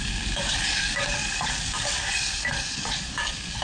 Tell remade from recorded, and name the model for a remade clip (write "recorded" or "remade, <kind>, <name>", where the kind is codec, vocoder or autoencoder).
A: remade, codec, DAC